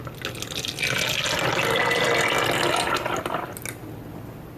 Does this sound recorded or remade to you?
recorded